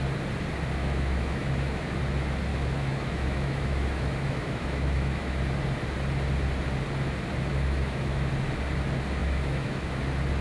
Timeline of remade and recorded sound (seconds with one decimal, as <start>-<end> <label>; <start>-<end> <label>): 0.0-0.8 recorded; 0.8-2.0 remade; 2.0-2.5 recorded; 2.5-5.4 remade; 5.4-7.5 recorded; 7.5-8.3 remade; 8.3-9.2 recorded; 9.2-10.0 remade; 10.0-10.4 recorded